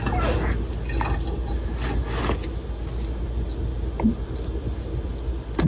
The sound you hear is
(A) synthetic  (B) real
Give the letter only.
B